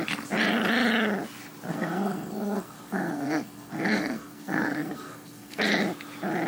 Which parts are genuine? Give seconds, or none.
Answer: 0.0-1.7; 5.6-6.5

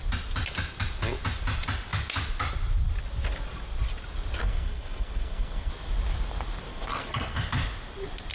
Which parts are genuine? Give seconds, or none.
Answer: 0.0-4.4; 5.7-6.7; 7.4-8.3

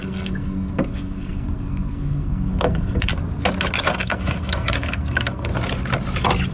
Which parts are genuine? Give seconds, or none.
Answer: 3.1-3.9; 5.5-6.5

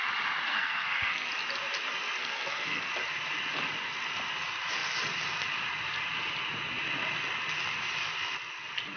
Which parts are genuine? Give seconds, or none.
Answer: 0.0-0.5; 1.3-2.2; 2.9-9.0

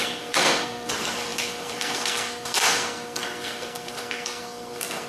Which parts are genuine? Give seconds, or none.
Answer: none